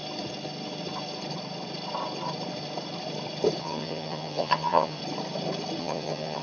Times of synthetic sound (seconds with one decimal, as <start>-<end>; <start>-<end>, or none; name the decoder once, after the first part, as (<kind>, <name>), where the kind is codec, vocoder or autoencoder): 3.6-5.0 (vocoder, HiFi-GAN); 5.8-6.4